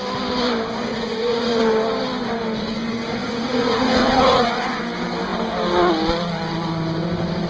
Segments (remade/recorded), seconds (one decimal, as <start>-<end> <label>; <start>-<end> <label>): 0.0-0.9 recorded; 0.9-1.6 remade; 1.6-3.2 recorded; 3.2-4.8 remade; 4.8-7.5 recorded